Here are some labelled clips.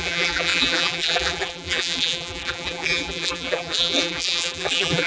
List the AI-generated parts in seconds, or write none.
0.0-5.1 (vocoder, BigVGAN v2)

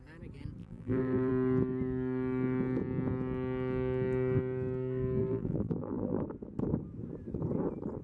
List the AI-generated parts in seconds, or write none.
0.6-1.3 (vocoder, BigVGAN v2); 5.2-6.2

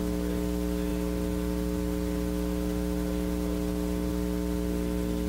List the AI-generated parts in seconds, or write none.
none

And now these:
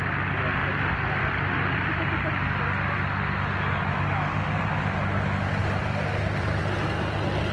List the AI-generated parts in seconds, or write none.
0.6-2.0 (vocoder, BigVGAN v2); 5.6-6.6

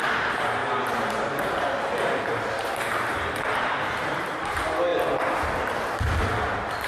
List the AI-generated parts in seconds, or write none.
0.0-4.9 (vocoder, BigVGAN v2); 6.2-6.9